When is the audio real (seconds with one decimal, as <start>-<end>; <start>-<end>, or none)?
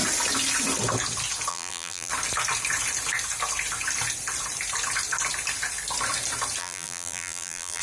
0.0-1.5; 2.1-6.6